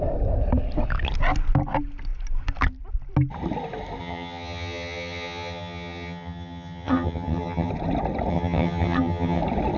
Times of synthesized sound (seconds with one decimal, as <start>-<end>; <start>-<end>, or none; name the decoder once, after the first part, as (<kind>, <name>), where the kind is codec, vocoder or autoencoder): 4.0-7.7 (vocoder, HiFi-GAN); 8.3-9.4